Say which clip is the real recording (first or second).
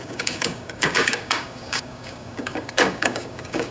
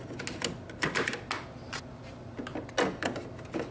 second